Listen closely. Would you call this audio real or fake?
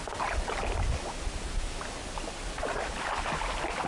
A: real